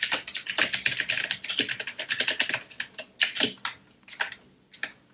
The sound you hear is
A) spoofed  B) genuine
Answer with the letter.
B